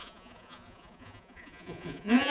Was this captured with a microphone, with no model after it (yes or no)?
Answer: no